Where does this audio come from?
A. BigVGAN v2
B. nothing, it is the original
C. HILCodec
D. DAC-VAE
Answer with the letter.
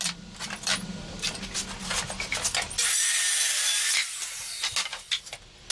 B